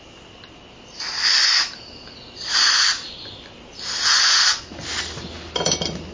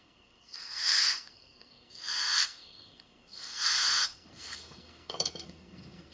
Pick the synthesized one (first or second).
second